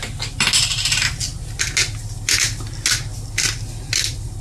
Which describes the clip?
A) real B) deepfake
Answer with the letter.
A